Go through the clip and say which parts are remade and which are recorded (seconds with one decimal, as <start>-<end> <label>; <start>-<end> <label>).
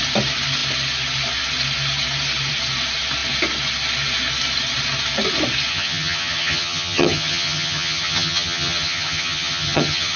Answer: 0.0-5.7 recorded; 5.7-10.2 remade